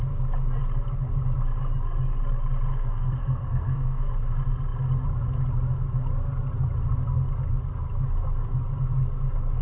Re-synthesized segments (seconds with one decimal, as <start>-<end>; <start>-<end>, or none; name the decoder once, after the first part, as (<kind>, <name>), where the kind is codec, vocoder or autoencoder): 2.7-4.1 (codec, SNAC)